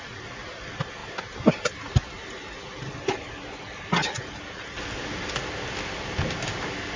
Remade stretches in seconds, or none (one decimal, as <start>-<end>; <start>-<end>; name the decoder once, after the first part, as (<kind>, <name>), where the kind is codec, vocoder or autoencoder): none